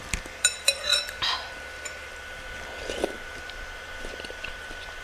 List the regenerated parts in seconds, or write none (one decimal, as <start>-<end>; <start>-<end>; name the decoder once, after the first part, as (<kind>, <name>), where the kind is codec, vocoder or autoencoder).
0.0-5.0 (vocoder, BigVGAN v2)